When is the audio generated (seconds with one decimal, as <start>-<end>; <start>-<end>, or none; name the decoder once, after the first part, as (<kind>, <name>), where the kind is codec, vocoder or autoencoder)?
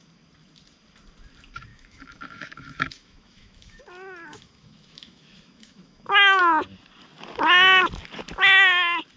1.7-3.8 (autoencoder, DAC-VAE); 4.3-6.4